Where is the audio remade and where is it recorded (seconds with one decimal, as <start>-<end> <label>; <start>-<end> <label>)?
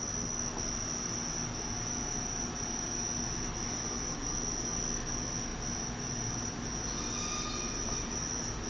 0.0-8.7 recorded